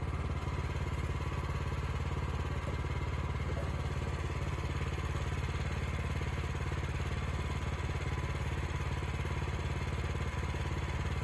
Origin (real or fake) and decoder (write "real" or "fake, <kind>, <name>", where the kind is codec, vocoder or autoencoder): real